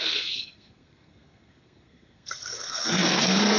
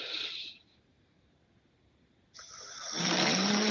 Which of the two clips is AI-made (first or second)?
first